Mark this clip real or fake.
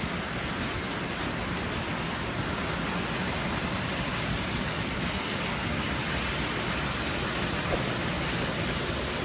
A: real